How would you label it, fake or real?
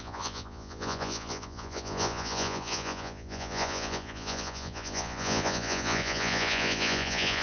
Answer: fake